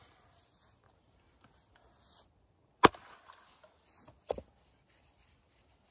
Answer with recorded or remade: recorded